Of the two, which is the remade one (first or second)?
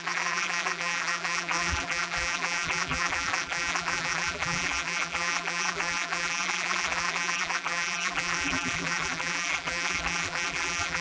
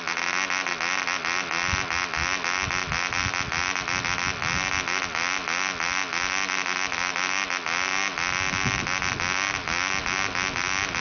first